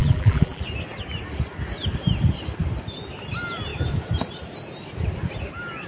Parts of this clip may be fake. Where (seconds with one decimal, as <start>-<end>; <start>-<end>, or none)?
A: 0.0-0.6